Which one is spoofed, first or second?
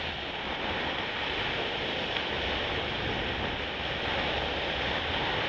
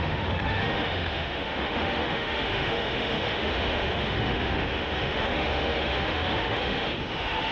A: second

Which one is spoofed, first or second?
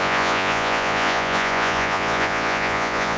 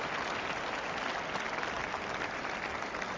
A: first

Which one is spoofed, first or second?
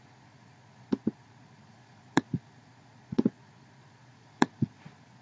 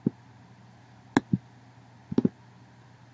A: first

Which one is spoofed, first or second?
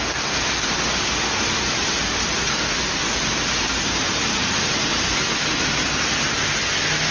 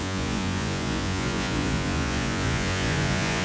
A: second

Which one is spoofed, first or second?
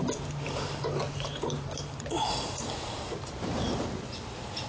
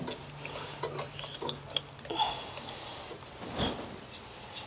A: first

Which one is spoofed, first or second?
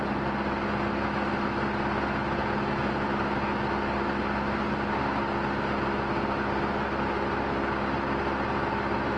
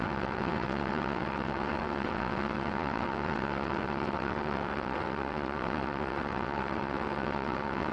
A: second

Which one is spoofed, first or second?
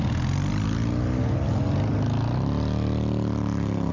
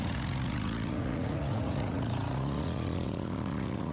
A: second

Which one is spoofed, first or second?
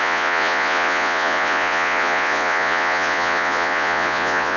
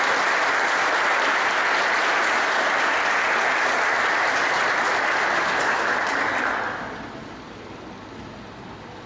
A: first